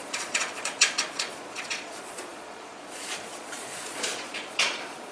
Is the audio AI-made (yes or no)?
yes